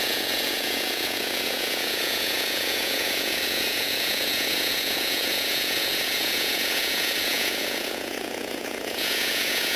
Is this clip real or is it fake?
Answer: fake